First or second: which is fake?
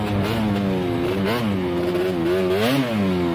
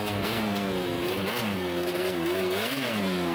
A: second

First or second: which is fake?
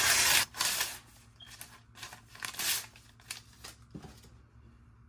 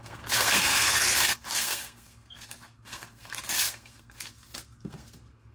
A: second